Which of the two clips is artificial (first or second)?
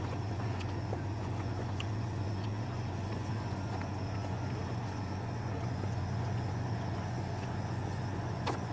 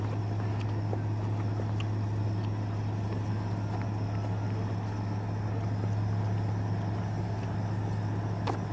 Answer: first